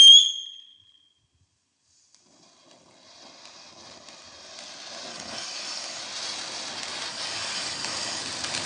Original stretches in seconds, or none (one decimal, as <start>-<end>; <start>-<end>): 0.0-5.1; 6.0-7.1; 8.2-8.7